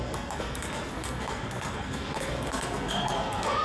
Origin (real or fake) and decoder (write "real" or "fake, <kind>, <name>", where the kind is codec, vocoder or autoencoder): fake, codec, SNAC